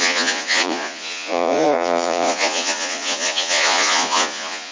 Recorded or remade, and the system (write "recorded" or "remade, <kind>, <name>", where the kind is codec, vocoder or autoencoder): remade, vocoder, Vocos